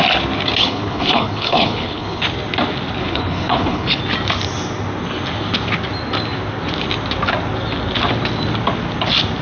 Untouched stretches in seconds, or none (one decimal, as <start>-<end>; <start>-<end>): 0.0-0.6; 2.2-3.0; 4.0-9.4